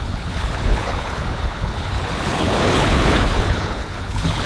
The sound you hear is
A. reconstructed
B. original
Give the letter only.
A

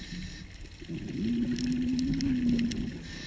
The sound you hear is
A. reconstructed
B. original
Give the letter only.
B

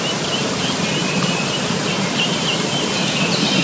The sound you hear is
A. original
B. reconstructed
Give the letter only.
A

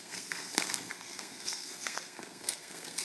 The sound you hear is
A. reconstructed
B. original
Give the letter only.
A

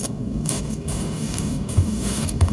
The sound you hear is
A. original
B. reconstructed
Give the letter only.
B